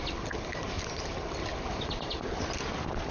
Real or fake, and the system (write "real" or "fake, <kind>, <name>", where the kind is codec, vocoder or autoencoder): real